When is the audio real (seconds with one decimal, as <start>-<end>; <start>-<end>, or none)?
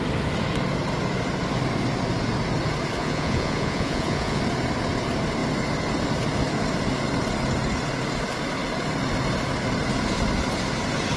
0.0-3.0; 4.4-11.2